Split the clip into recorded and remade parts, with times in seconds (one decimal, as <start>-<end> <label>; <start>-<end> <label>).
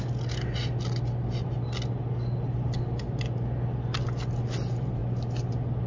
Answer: 0.0-5.9 recorded